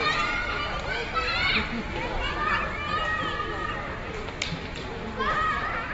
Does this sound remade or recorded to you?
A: recorded